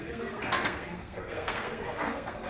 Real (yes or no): no